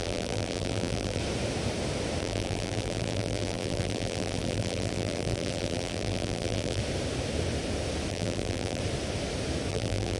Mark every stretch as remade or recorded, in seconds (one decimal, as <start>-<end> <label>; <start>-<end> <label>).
0.0-1.2 remade; 1.2-2.2 recorded; 2.2-6.8 remade; 6.8-8.1 recorded; 8.1-8.8 remade; 8.8-9.7 recorded; 9.7-10.2 remade